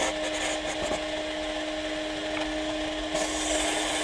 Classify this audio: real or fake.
real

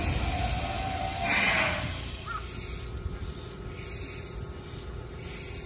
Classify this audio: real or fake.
real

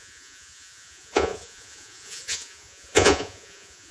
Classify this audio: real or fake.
fake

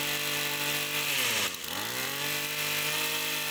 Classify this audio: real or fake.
real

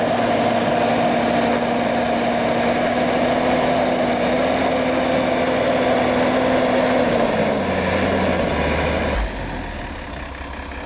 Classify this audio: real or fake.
real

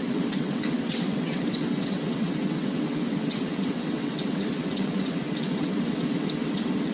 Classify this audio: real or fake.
fake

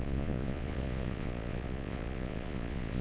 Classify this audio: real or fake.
fake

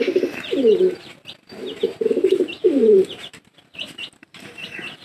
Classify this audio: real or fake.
fake